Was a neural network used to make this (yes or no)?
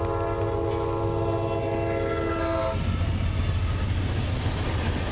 no